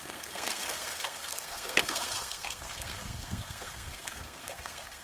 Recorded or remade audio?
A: remade